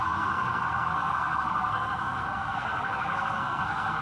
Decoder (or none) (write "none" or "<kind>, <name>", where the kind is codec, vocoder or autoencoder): codec, SNAC